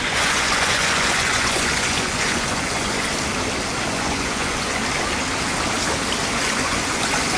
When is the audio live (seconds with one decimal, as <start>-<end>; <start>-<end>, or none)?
3.1-3.9; 4.8-6.3